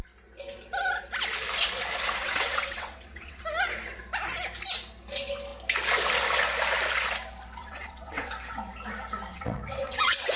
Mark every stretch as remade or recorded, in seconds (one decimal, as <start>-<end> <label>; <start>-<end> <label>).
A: 0.0-2.2 recorded; 2.2-3.4 remade; 3.4-7.6 recorded; 7.6-8.3 remade; 8.3-9.3 recorded; 9.3-10.4 remade